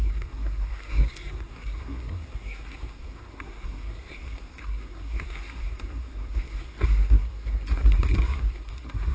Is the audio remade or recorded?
remade